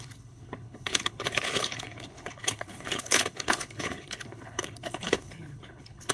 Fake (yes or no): yes